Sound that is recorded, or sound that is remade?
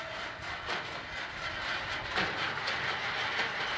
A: recorded